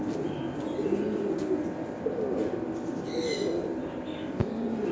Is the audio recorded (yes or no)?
yes